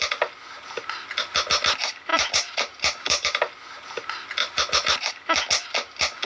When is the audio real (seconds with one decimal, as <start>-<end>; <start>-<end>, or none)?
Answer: 0.0-2.1; 3.4-4.4; 5.1-6.2